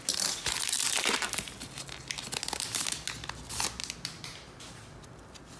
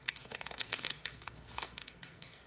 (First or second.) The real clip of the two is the first